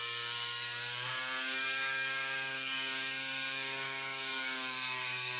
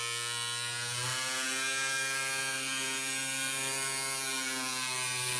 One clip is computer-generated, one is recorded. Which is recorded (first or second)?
second